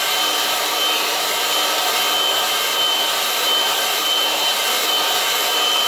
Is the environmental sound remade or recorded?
recorded